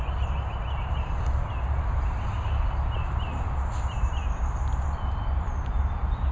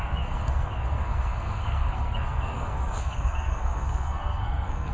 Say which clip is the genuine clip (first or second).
first